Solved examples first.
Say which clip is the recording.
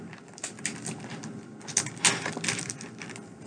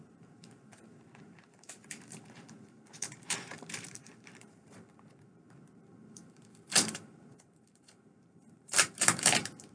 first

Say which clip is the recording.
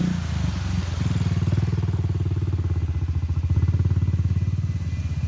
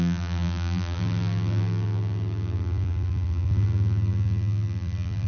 first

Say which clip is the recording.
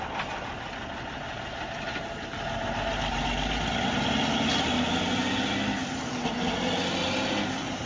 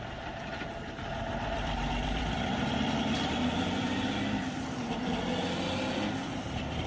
first